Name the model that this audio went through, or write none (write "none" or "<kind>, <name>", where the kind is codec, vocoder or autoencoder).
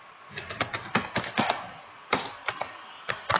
none